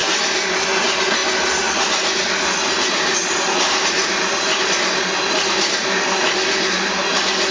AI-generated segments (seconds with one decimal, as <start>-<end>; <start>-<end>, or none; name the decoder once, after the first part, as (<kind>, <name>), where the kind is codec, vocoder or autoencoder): none